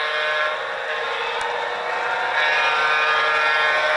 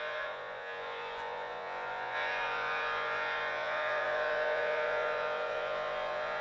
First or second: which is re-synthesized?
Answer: second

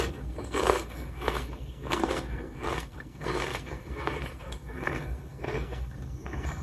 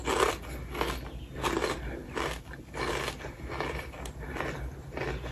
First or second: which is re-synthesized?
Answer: first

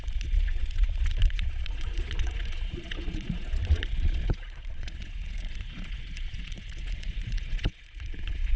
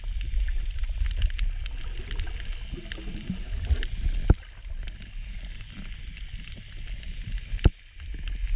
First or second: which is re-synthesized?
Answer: first